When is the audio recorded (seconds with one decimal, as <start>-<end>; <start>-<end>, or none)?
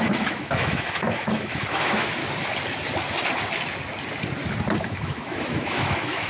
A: 2.2-4.8